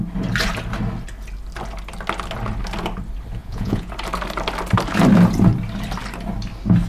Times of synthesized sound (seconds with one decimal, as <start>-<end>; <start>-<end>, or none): 3.4-3.9